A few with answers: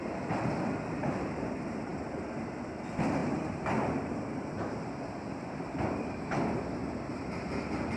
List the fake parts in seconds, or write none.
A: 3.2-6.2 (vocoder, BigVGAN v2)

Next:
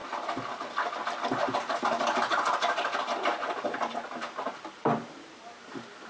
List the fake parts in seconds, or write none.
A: 3.3-5.5 (vocoder, BigVGAN v2)

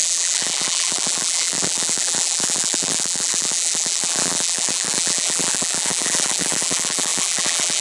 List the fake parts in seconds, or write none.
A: 0.0-7.8 (vocoder, BigVGAN v2)

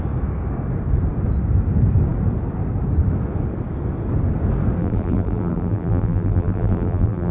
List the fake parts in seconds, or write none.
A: 4.8-7.3 (vocoder, BigVGAN v2)

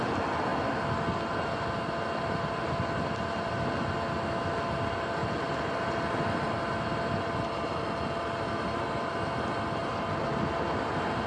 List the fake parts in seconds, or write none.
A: none

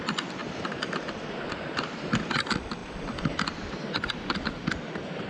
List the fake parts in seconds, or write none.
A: 0.4-2.1 (vocoder, BigVGAN v2); 2.8-5.3